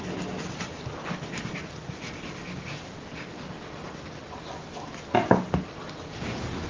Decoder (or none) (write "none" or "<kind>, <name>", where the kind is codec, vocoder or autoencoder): none